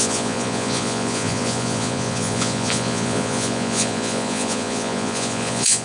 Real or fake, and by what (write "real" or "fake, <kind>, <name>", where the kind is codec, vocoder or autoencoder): fake, vocoder, Vocos